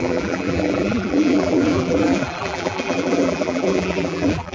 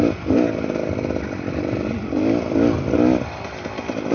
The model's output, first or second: first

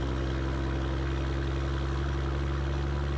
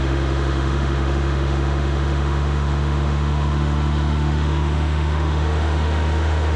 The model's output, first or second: second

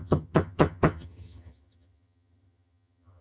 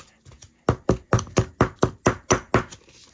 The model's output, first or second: first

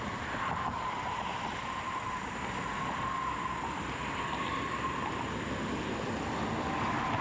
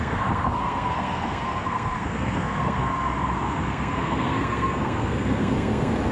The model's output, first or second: second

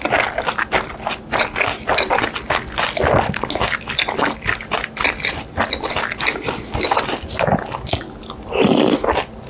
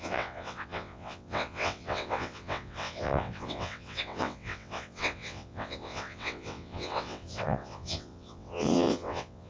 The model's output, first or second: second